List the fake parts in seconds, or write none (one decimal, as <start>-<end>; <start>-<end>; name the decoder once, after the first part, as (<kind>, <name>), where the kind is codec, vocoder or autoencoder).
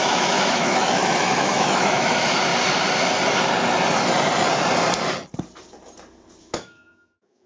0.0-2.5 (autoencoder, DAC-VAE); 6.4-7.5